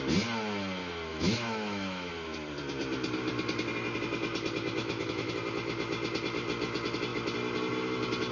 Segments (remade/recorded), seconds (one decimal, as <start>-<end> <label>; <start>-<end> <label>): 0.0-1.1 recorded; 1.1-2.1 remade; 2.1-4.8 recorded; 4.8-5.3 remade; 5.3-8.3 recorded